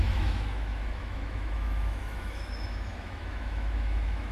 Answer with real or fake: fake